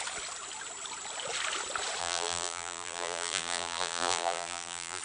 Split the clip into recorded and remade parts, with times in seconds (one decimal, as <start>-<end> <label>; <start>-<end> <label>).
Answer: 0.0-2.0 recorded; 2.0-5.0 remade